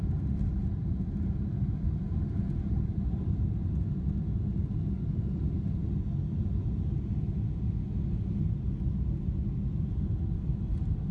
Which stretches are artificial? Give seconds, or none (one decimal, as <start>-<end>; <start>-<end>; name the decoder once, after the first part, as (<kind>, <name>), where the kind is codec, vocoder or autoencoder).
none